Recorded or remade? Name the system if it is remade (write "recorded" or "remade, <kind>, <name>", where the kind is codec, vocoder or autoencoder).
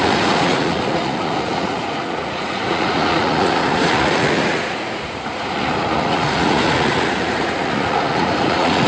remade, vocoder, Vocos